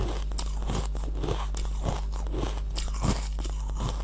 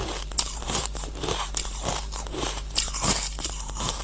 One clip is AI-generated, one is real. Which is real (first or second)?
first